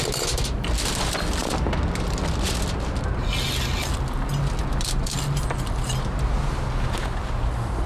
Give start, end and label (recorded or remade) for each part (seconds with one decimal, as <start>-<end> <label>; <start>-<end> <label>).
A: 0.0-7.9 recorded